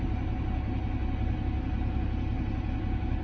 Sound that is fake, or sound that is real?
real